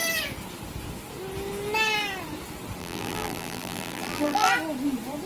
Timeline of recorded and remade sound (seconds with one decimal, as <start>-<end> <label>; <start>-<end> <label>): 0.0-2.8 recorded; 2.8-4.5 remade; 4.5-5.3 recorded

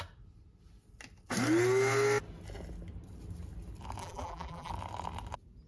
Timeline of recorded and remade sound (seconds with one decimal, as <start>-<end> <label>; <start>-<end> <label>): 0.0-4.0 recorded; 4.0-4.7 remade; 4.7-5.7 recorded

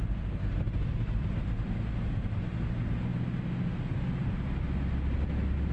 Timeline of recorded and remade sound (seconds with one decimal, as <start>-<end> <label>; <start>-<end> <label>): 0.0-0.4 recorded; 0.4-1.3 remade; 1.3-5.7 recorded

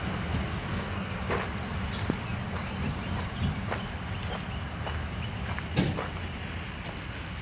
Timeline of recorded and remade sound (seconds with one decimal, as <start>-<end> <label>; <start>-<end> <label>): 0.0-0.7 recorded; 0.7-1.2 remade; 1.2-7.4 recorded